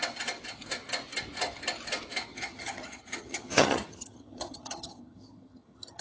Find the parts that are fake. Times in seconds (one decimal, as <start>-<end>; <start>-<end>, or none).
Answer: 2.3-6.0